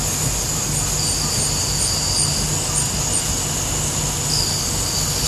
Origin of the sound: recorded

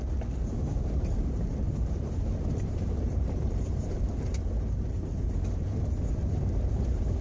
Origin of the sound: remade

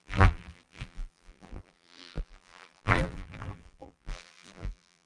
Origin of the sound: remade